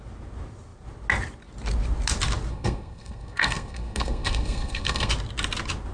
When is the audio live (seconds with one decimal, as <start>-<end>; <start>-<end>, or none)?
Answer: 0.0-2.5; 5.1-5.9